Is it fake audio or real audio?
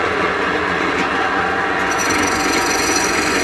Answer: fake